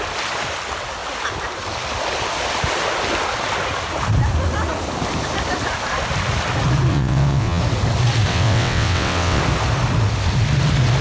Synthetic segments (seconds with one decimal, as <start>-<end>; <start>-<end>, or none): 6.9-7.6; 8.3-9.4